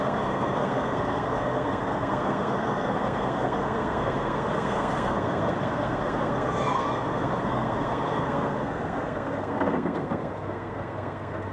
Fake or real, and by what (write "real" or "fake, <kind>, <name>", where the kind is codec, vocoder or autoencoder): fake, codec, SNAC